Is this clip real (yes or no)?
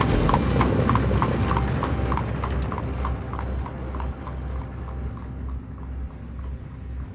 yes